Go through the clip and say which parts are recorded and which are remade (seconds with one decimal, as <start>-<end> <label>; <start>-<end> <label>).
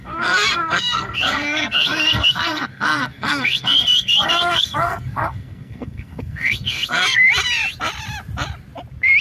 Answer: 0.0-7.3 remade; 7.3-9.2 recorded